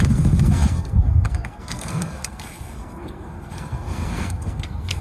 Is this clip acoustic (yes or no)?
no